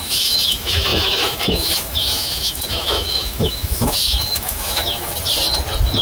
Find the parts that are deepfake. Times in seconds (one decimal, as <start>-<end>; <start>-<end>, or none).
0.0-5.1